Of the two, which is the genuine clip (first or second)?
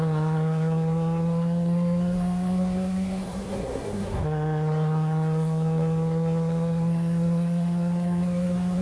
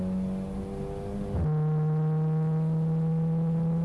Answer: second